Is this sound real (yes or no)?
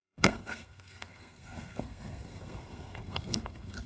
no